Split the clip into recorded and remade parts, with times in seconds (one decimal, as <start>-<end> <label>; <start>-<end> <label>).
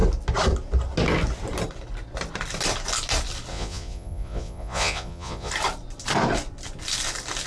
0.0-3.5 recorded; 3.5-5.5 remade; 5.5-7.5 recorded